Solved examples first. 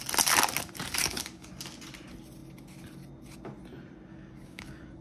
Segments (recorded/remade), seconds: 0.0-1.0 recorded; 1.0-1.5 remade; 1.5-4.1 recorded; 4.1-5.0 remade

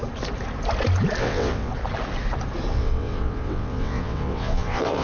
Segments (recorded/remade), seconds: 0.0-1.2 recorded; 1.2-1.7 remade; 1.7-2.7 recorded; 2.7-5.0 remade

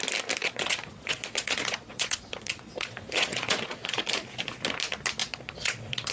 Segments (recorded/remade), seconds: 0.0-0.4 recorded; 0.4-4.1 remade; 4.1-5.2 recorded; 5.2-6.1 remade

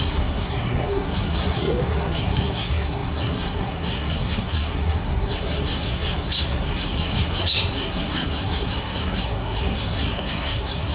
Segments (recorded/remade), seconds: 0.0-10.9 remade

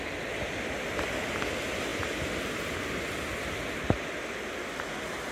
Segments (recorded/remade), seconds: 0.0-5.3 recorded